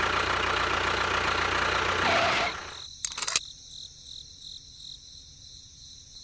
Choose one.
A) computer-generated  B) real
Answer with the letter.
B